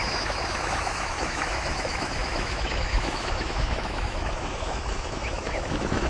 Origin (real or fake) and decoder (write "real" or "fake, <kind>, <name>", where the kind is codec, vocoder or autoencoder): fake, autoencoder, DAC-VAE